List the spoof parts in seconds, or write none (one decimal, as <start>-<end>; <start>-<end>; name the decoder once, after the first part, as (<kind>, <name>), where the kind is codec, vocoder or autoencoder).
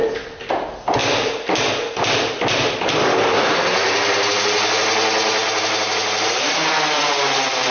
6.0-7.0 (vocoder, BigVGAN v2)